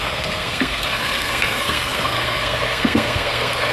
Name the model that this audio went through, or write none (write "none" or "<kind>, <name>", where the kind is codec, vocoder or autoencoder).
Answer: codec, SNAC